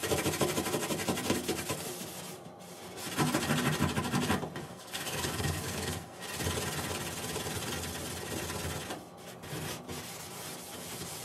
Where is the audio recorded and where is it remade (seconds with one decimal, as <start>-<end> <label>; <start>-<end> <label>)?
0.0-4.6 recorded; 4.6-6.2 remade; 6.2-11.2 recorded